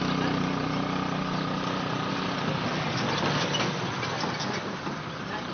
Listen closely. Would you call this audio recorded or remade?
recorded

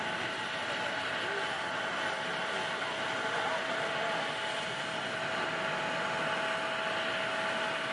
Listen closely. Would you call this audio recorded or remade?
recorded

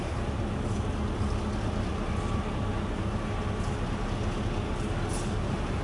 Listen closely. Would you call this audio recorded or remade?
recorded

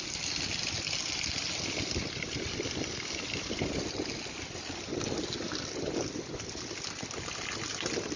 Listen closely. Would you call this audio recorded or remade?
recorded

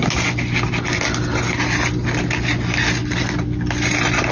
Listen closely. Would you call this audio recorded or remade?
recorded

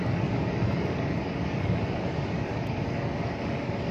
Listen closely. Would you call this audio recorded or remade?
remade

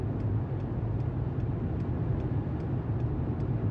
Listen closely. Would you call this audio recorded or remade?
recorded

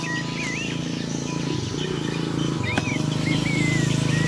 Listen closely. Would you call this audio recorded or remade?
recorded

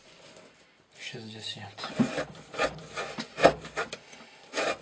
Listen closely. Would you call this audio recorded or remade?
recorded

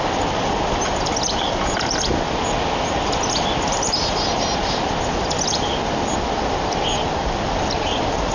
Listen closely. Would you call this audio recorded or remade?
recorded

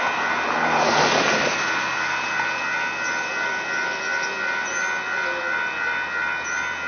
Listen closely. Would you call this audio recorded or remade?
recorded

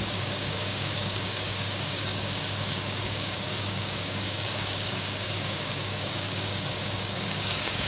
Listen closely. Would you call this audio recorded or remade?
remade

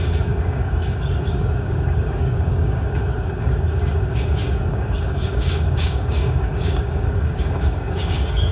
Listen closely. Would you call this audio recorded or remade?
remade